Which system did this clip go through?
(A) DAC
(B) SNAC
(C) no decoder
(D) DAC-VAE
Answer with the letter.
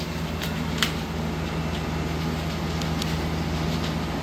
C